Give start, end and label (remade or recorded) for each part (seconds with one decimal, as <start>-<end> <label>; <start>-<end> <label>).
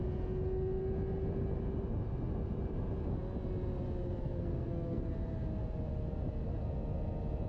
0.0-4.2 recorded; 4.2-5.1 remade; 5.1-7.5 recorded